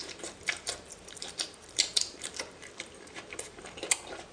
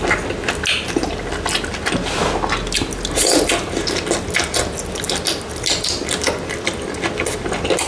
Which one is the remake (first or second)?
first